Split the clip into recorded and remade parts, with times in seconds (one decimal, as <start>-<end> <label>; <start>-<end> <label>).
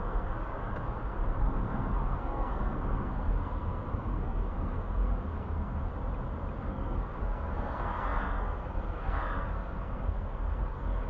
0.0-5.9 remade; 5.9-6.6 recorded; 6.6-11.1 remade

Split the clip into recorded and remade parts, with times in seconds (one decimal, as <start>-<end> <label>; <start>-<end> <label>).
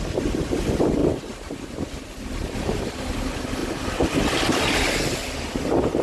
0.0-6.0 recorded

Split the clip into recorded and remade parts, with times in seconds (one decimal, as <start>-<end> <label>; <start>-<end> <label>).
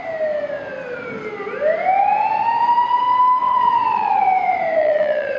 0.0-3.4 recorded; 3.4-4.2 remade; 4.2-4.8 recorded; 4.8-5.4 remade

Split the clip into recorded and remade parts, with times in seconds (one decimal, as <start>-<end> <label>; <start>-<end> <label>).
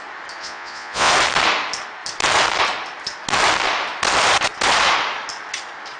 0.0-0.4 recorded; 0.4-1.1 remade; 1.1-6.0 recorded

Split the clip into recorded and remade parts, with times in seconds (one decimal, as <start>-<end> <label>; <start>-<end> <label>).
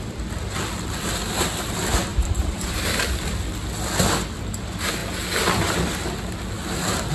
0.0-2.1 recorded; 2.1-3.0 remade; 3.0-7.1 recorded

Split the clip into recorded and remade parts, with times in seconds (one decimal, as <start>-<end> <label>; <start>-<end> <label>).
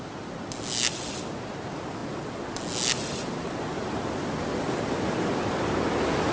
0.0-6.3 recorded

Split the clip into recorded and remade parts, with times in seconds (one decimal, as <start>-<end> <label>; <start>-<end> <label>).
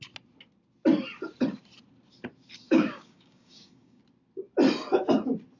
0.0-2.6 recorded; 2.6-4.0 remade; 4.0-5.6 recorded